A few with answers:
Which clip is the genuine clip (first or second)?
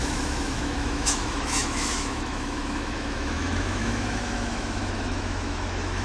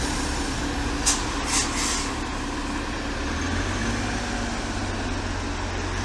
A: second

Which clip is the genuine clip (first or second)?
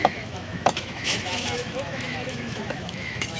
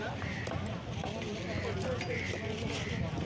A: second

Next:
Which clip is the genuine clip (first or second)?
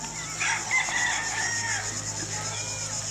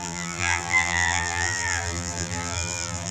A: first